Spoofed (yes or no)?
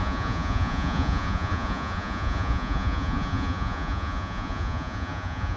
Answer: yes